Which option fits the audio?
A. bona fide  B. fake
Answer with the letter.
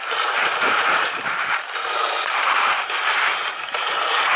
B